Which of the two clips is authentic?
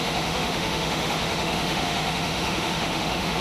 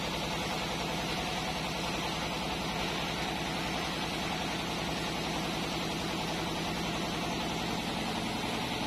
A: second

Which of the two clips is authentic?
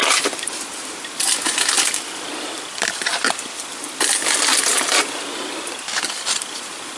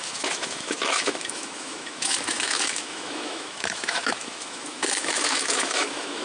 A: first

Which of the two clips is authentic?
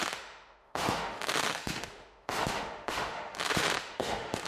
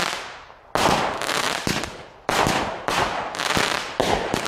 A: second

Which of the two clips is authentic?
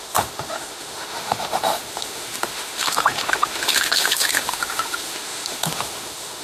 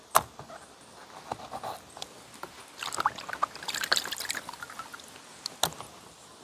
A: second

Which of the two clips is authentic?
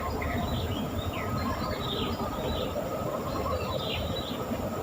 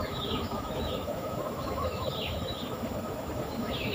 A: first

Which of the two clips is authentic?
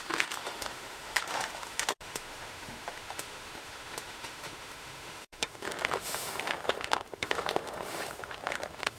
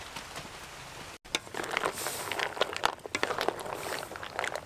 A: second